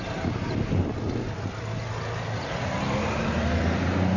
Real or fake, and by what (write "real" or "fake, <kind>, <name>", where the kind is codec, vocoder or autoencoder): real